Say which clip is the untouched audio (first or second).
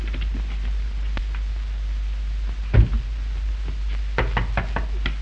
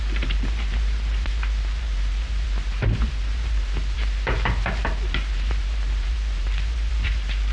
first